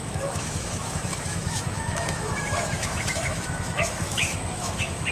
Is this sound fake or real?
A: fake